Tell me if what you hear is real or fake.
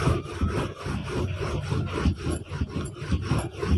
real